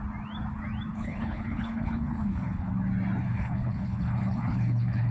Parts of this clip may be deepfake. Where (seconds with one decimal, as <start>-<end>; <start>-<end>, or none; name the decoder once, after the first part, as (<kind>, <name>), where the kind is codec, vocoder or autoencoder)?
0.9-2.7 (codec, HILCodec); 3.2-5.1